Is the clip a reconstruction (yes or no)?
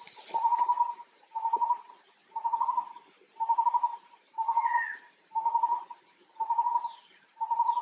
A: yes